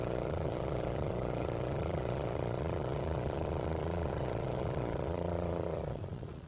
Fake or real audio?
fake